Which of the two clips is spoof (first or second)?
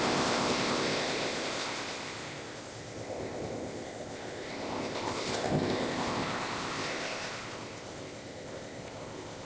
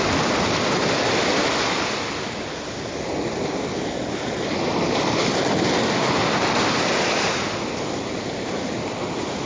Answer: first